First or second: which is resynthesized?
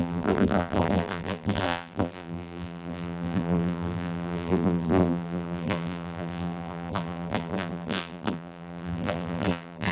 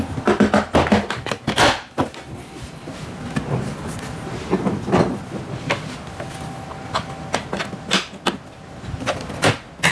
first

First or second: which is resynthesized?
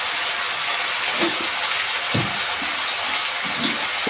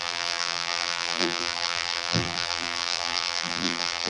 second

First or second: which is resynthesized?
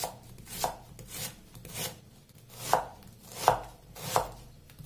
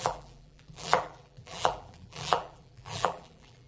second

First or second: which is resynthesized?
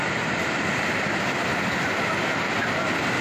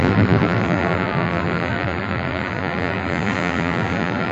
second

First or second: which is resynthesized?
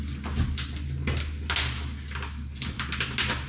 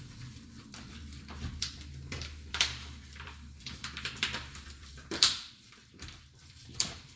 second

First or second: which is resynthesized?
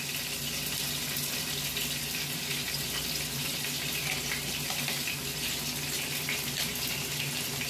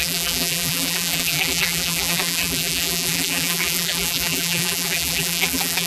second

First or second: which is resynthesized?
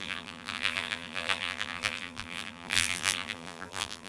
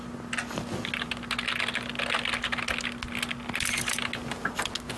first